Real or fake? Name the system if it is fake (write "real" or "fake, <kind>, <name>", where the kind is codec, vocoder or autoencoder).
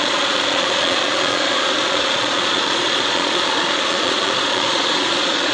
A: fake, vocoder, Vocos